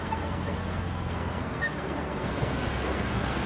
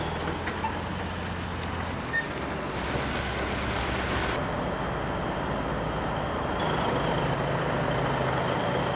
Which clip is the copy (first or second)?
first